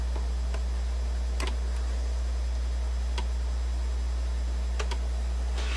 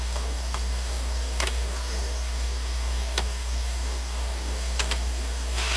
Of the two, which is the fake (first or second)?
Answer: second